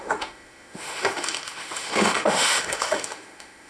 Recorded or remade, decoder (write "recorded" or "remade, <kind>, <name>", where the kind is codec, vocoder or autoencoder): remade, autoencoder, DAC-VAE